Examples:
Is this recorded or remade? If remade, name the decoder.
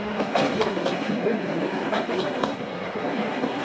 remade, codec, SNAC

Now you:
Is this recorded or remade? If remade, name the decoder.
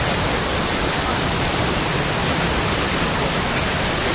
recorded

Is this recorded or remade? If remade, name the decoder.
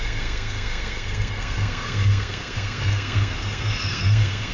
remade, codec, SNAC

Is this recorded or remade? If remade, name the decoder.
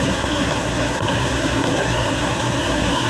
remade, codec, SNAC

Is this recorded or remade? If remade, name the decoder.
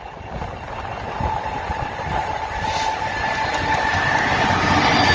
recorded